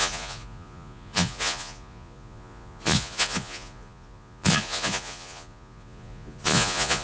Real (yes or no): no